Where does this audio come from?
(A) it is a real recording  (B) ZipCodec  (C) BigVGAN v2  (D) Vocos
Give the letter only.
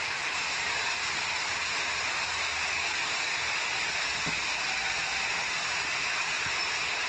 A